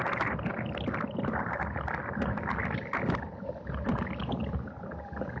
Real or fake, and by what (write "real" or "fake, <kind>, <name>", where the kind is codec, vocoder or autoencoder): real